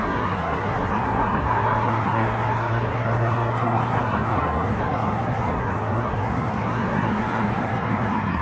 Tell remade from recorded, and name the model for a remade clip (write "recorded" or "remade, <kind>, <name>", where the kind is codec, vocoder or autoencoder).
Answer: remade, codec, SNAC